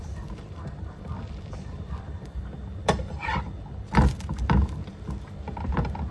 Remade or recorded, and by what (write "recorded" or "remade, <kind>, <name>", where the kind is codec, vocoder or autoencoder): remade, vocoder, BigVGAN v2